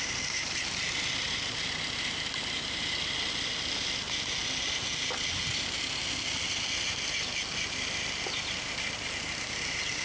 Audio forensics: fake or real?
real